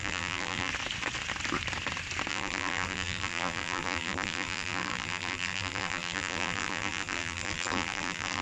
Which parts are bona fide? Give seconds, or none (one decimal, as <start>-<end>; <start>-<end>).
0.7-2.3